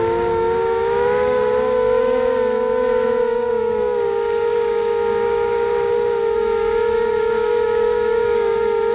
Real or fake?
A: fake